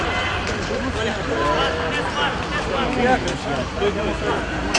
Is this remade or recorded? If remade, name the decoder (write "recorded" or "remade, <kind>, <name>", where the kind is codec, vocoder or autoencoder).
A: recorded